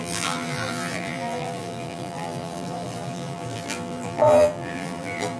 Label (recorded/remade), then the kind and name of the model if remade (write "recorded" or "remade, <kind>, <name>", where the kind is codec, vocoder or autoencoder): remade, vocoder, BigVGAN v2